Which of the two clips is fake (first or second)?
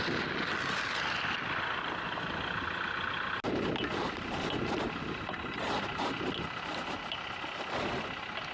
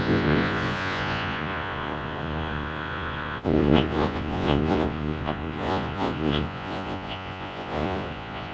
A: second